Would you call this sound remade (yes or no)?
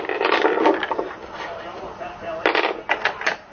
no